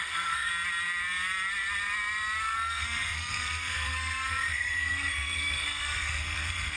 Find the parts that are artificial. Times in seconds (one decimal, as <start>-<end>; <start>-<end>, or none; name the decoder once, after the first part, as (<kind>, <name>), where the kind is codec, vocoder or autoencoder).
0.0-0.5 (codec, SNAC); 2.4-6.8